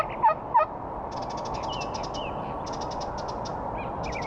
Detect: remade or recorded recorded